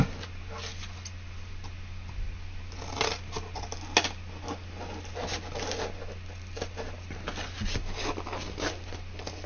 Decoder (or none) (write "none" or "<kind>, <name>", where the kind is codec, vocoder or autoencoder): none